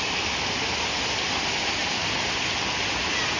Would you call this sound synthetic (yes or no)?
no